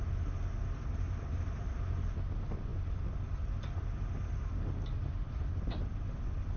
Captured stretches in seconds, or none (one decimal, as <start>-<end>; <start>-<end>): 0.0-6.6

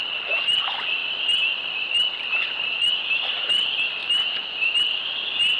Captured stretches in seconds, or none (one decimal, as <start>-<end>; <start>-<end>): 0.0-4.0; 4.7-5.6

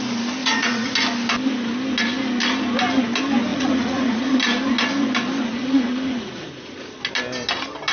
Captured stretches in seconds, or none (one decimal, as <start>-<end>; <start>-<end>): 0.0-0.4; 0.9-3.5; 4.4-5.6; 6.7-7.9

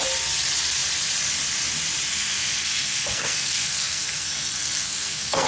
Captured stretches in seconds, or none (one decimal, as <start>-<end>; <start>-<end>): 0.0-2.1